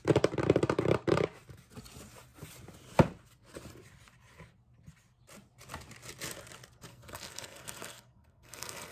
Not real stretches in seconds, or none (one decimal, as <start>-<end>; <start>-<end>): 6.9-8.9

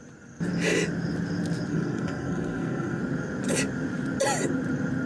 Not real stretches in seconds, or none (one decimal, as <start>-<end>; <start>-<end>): 1.7-3.0

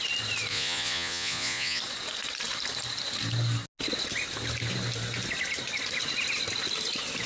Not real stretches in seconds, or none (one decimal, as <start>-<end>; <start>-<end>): 0.5-1.8

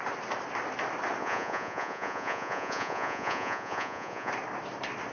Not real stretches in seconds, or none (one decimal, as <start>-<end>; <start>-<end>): 1.2-4.3

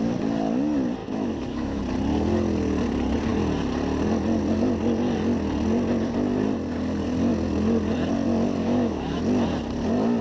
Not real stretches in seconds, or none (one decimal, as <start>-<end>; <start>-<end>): 1.0-1.8; 8.6-9.2

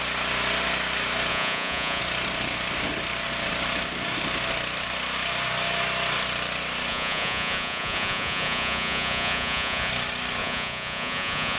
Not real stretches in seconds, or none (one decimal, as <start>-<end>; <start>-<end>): 1.3-2.0; 6.9-9.9; 10.4-11.6

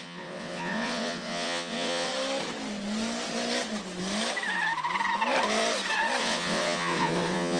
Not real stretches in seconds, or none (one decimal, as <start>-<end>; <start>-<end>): 0.0-2.1; 6.2-7.6